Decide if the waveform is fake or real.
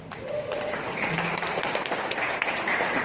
fake